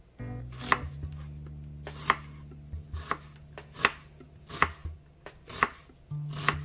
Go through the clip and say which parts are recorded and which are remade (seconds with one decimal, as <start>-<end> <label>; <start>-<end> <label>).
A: 0.0-6.6 recorded